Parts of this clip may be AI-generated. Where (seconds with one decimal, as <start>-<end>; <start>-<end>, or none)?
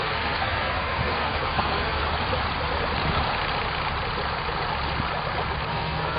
0.0-2.0; 5.7-6.2